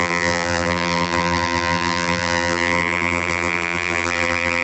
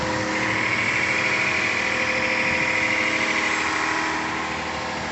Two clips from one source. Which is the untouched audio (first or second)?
second